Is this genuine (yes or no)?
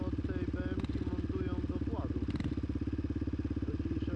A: yes